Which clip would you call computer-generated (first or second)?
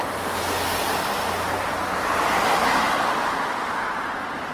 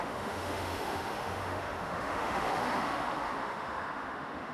second